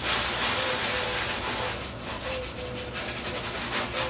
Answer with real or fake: real